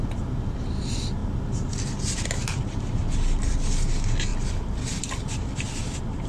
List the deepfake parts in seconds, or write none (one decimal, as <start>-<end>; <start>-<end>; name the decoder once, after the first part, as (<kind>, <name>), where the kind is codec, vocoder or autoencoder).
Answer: 4.3-5.0 (vocoder, BigVGAN v2)